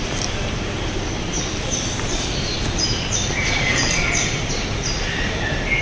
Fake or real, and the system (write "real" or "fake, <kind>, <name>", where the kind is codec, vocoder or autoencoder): fake, vocoder, BigVGAN v2